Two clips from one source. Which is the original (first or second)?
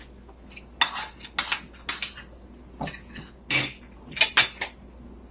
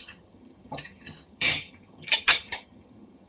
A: first